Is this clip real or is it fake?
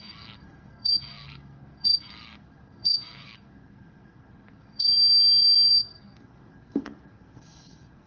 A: fake